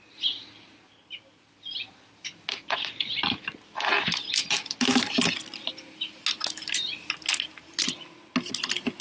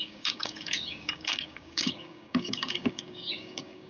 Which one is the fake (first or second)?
second